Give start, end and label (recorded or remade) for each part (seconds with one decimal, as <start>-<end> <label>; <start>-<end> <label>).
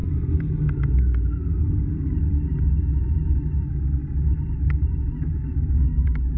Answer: 0.0-2.6 recorded; 2.6-4.0 remade; 4.0-4.9 recorded; 4.9-6.4 remade